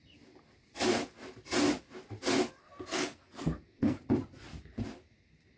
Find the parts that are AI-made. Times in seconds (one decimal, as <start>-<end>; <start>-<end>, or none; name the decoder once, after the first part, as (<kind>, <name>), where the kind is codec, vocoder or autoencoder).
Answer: 2.6-4.0 (codec, SNAC)

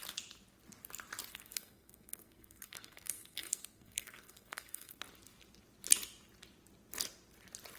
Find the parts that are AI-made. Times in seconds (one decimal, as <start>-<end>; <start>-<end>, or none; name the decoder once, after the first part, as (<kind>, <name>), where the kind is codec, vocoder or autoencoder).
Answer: 1.3-5.0 (codec, SNAC)

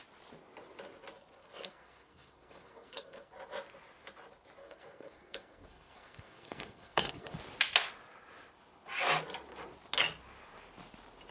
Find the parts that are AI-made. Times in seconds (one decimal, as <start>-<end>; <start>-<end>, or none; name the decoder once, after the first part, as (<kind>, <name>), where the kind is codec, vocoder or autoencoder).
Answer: 1.4-3.3 (codec, SNAC); 4.6-7.3